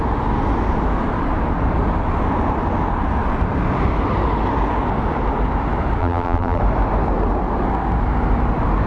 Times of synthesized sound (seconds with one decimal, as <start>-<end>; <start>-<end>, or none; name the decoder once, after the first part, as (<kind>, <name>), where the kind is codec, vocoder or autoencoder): 6.0-6.6 (vocoder, BigVGAN v2)